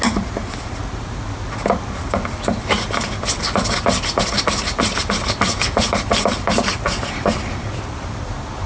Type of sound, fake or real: real